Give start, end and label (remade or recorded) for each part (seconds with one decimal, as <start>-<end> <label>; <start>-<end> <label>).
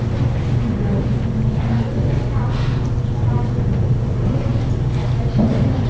0.0-5.9 recorded